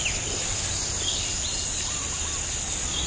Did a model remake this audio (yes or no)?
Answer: no